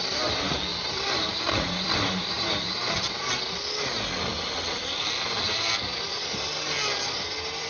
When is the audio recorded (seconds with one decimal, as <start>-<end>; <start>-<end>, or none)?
0.0-0.7; 3.3-7.7